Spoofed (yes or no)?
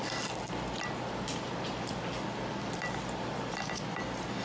no